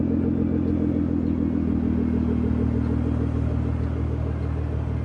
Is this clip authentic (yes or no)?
yes